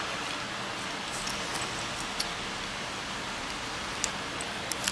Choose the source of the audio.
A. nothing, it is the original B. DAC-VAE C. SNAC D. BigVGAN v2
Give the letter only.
A